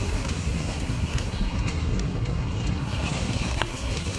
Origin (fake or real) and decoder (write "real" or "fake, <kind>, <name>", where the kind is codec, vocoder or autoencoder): fake, codec, SNAC